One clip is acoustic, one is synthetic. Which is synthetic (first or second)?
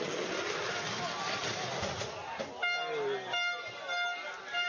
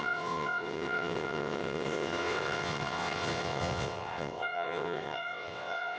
second